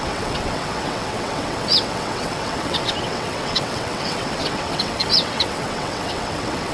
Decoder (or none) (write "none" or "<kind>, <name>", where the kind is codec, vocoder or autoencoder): vocoder, WaveNeXt